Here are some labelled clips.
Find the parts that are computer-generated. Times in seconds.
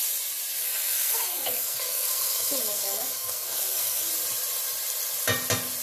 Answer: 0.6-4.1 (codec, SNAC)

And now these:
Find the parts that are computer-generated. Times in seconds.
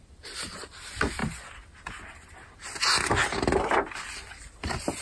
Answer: 0.0-1.2 (vocoder, BigVGAN v2); 4.1-5.0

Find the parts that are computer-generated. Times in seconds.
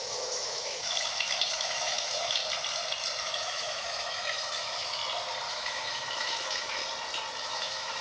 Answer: 0.0-2.4 (autoencoder, DAC-VAE); 3.2-5.0; 5.5-6.8; 7.4-8.0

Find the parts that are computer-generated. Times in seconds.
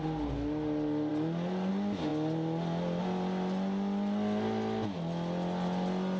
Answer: none